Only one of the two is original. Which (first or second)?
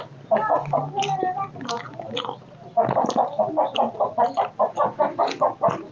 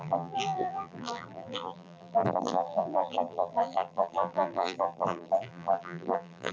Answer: first